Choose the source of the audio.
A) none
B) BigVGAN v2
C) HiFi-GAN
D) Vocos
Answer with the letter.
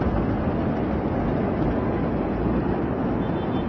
A